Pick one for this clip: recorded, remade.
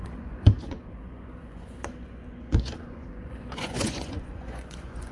remade